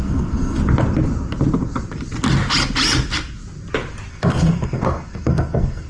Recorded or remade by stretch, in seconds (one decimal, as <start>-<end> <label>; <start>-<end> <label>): 0.0-0.6 remade; 0.6-4.1 recorded; 4.1-5.9 remade